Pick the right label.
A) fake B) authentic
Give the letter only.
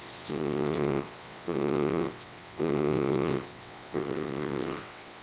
A